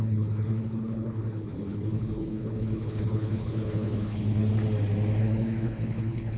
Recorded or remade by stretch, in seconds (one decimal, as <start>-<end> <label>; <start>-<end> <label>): 0.0-4.5 remade; 4.5-5.2 recorded; 5.2-6.4 remade